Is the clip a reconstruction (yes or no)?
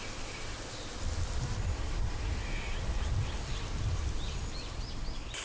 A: no